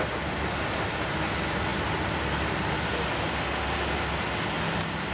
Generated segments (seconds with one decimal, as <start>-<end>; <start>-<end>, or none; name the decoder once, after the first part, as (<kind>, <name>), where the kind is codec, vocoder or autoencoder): none